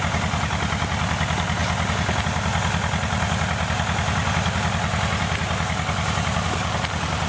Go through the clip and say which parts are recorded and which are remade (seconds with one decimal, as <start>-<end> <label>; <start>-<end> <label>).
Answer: 0.0-7.3 recorded

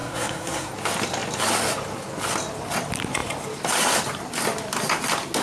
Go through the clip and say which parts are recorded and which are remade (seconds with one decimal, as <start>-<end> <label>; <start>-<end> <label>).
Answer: 0.0-0.7 remade; 0.7-5.4 recorded

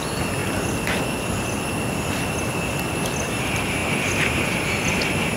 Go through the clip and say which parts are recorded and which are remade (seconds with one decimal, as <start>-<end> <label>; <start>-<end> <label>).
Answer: 0.0-5.4 recorded

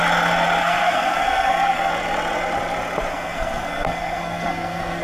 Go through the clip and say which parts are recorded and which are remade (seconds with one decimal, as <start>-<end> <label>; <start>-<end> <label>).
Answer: 0.0-0.6 recorded; 0.6-1.9 remade; 1.9-3.1 recorded; 3.1-5.0 remade